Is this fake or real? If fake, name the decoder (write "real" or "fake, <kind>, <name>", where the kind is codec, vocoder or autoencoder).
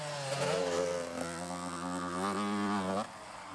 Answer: real